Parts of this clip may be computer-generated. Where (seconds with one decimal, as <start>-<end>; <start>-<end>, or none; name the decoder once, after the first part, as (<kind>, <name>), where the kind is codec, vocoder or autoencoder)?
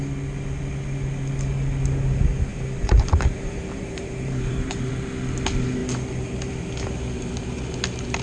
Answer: 2.5-4.9 (vocoder, BigVGAN v2)